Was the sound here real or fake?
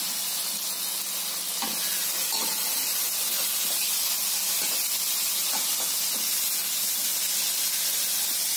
real